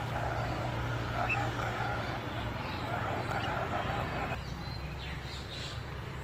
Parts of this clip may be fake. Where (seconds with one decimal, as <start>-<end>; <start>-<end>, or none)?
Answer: 0.0-2.2; 5.5-6.2